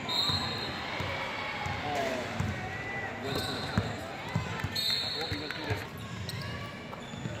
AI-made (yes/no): no